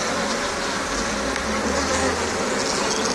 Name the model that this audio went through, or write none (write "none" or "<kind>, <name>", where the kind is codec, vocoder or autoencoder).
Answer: none